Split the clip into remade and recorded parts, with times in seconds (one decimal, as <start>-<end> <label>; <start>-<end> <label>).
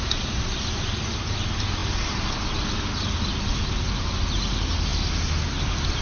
0.0-6.0 recorded